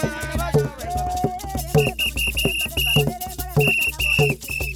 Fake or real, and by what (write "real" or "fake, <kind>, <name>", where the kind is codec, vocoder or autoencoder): real